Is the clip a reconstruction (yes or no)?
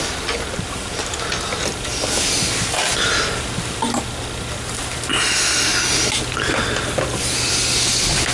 no